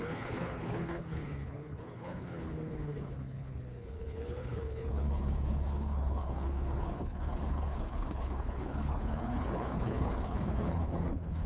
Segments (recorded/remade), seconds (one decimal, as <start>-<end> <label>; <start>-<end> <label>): 0.0-11.5 remade